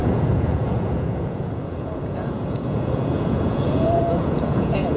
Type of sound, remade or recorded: remade